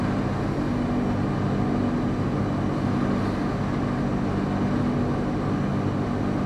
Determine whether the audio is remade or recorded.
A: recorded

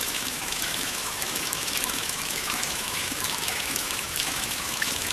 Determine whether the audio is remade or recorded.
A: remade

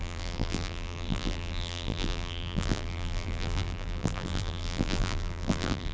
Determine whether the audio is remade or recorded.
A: remade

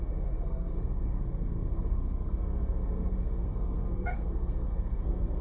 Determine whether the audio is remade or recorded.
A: remade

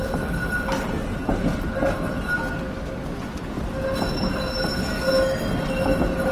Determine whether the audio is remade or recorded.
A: recorded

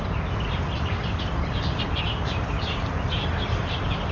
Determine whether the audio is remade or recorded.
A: recorded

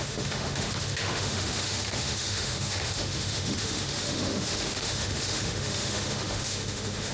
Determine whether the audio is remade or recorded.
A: remade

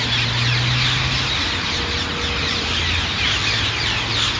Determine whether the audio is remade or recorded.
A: recorded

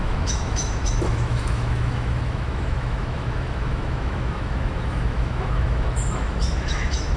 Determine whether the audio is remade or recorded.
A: remade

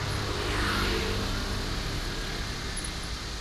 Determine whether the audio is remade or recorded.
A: recorded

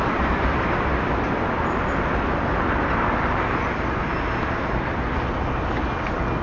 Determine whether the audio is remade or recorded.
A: recorded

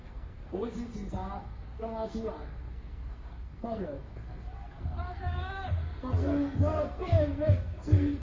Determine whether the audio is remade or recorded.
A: remade